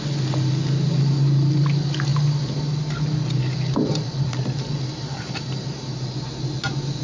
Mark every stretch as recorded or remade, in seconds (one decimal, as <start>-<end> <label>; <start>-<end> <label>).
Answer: 0.0-7.0 recorded